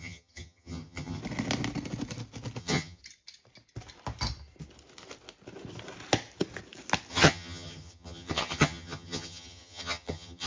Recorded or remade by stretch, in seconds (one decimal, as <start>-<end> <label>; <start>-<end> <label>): 0.0-1.2 remade; 1.2-2.6 recorded; 2.6-3.0 remade; 3.0-7.1 recorded; 7.1-10.5 remade